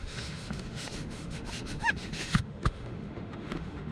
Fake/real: fake